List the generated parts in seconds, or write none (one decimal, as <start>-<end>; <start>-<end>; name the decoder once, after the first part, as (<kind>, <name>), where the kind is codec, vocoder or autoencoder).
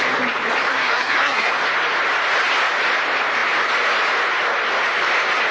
0.7-1.5 (codec, SNAC)